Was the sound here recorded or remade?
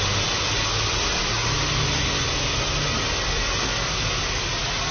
recorded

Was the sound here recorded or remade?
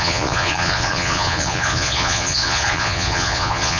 remade